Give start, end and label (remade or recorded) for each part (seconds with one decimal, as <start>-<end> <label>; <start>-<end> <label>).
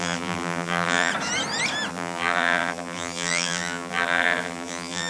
0.0-1.1 remade; 1.1-1.9 recorded; 1.9-5.1 remade